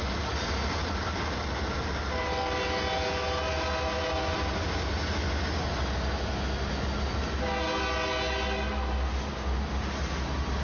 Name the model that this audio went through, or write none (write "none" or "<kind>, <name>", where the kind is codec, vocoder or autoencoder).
none